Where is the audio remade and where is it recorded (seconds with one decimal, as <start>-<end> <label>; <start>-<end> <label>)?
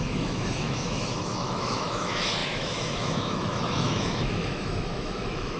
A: 0.0-5.6 remade